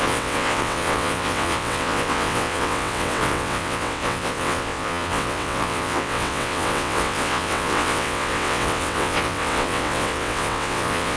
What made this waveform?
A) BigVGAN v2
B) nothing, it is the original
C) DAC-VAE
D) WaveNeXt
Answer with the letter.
D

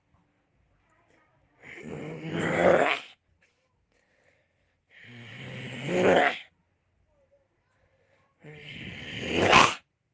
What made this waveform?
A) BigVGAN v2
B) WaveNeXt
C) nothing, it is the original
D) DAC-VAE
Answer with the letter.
C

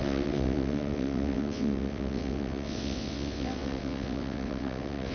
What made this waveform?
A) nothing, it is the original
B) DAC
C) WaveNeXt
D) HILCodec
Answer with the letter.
C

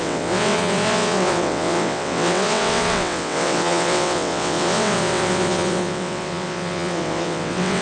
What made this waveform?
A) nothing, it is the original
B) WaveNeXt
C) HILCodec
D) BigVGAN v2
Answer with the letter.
B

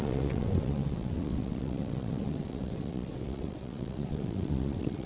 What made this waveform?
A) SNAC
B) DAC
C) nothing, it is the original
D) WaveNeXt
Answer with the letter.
D